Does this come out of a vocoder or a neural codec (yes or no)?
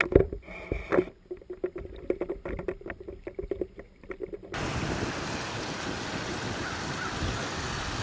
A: no